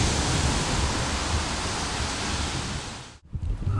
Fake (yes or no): no